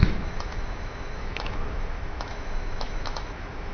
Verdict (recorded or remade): remade